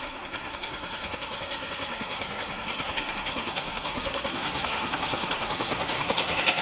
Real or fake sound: fake